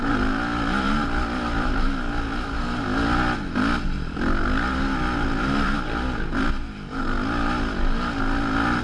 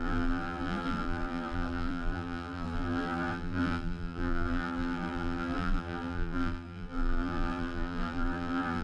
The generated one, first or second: second